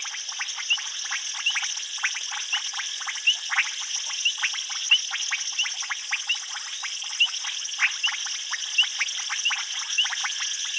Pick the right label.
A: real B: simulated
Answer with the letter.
A